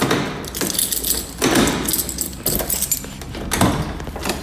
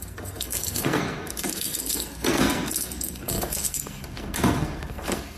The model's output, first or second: second